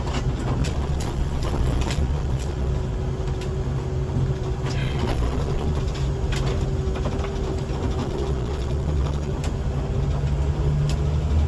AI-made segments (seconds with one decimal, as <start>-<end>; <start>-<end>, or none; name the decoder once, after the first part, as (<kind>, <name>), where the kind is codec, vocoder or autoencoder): 0.6-2.7 (vocoder, Vocos); 4.8-5.8; 8.0-9.3